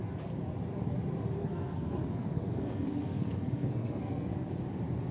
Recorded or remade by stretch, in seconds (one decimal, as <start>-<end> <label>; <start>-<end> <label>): 0.0-1.4 recorded; 1.4-4.5 remade; 4.5-5.1 recorded